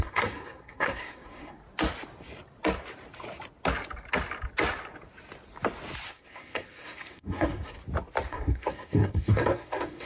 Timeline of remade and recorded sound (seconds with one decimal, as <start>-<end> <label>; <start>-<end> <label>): 0.0-1.6 remade; 1.6-6.1 recorded; 6.1-7.8 remade; 7.8-8.3 recorded; 8.3-10.1 remade